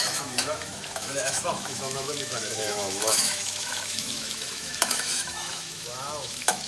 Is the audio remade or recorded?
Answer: remade